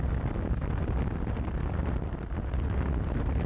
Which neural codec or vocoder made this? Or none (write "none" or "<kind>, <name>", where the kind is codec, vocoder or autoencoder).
none